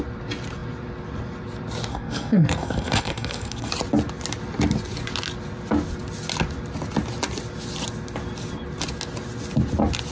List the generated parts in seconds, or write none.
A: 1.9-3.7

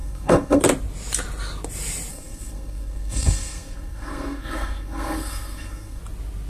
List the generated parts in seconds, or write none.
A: 0.0-0.6; 2.1-6.0

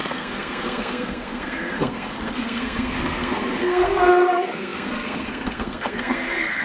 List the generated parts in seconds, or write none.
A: 0.0-6.6

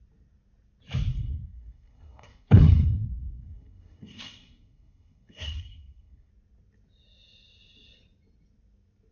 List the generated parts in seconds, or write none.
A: 1.1-6.3